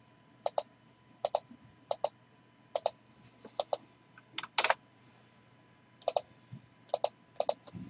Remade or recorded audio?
recorded